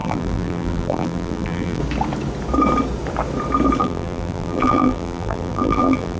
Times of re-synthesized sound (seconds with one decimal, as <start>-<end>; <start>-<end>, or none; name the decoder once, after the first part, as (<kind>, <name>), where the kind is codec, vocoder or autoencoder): 0.0-1.8 (vocoder, BigVGAN v2); 3.8-6.2